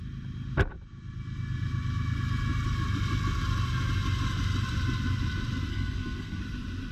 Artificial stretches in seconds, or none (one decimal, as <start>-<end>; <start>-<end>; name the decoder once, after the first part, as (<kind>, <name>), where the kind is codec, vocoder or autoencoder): 5.7-6.4 (codec, SNAC)